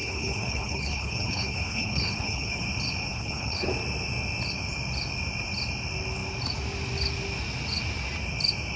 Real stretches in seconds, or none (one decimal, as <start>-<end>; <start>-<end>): 2.6-3.1; 3.7-8.8

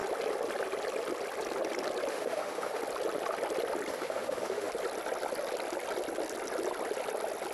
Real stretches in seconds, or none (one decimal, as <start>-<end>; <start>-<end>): 0.0-2.1; 2.8-3.9; 4.7-7.5

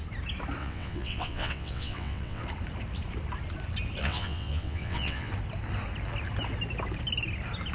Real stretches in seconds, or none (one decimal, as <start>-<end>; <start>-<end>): 0.0-0.6; 2.4-4.0; 5.3-7.7

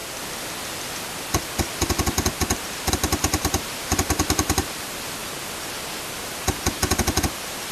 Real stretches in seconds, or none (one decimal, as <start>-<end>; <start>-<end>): 0.0-2.9; 5.2-7.3

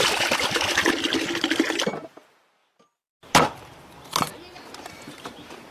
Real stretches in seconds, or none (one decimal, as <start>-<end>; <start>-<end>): 0.0-5.7